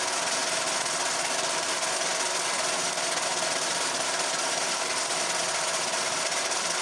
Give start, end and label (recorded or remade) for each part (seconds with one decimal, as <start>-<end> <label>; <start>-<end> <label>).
0.0-6.8 recorded